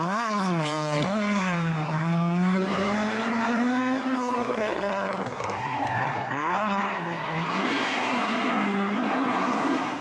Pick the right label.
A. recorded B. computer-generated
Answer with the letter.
B